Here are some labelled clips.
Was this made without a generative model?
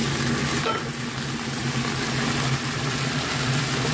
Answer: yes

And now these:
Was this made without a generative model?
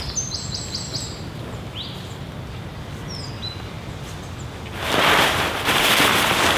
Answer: yes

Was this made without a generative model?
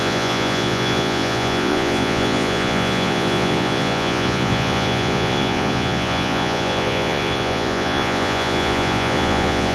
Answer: no